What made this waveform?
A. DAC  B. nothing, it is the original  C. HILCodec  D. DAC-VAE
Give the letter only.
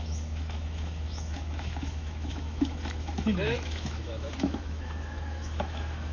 D